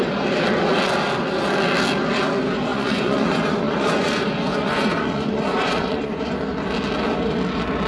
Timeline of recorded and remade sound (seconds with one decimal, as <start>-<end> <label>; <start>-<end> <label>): 0.0-2.7 recorded; 2.7-6.3 remade; 6.3-7.9 recorded